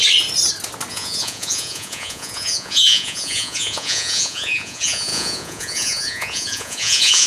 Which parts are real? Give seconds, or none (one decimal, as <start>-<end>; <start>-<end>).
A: 0.0-0.9